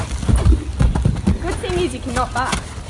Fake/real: real